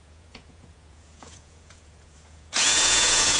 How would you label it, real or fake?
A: fake